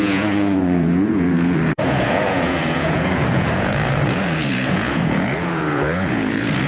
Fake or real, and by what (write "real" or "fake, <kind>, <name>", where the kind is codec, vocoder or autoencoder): fake, vocoder, Vocos